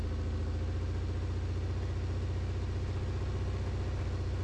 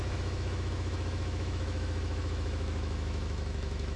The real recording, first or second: first